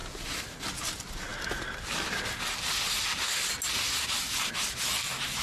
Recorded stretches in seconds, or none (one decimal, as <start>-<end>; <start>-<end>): 0.6-5.4